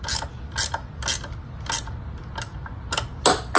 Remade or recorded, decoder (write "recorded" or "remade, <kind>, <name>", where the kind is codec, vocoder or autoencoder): recorded